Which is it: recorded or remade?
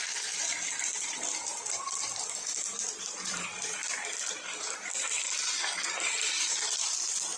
recorded